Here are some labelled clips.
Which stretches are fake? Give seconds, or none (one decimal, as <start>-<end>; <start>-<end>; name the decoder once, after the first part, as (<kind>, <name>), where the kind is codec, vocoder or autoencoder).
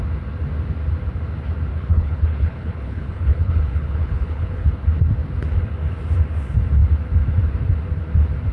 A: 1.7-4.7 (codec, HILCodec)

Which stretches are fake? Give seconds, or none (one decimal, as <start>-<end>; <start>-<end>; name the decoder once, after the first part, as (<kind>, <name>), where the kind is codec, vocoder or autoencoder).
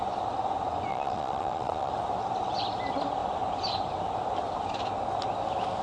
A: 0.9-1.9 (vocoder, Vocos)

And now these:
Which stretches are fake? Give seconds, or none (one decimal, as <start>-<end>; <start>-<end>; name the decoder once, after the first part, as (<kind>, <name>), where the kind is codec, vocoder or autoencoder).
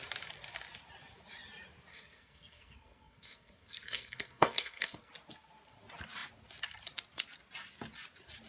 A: 1.9-5.1 (codec, SNAC)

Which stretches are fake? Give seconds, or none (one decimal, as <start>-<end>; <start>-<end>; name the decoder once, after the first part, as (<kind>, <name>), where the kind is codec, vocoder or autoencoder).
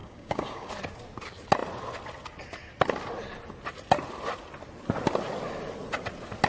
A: 0.0-0.7 (codec, DAC)